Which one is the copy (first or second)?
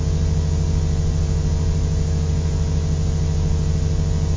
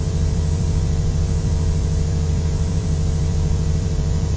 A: second